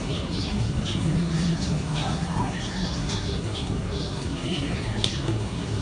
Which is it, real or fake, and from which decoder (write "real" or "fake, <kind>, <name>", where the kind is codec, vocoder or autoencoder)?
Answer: fake, codec, SNAC